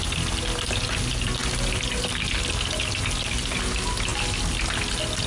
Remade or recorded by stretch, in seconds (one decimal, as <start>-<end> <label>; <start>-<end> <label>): 0.0-5.3 recorded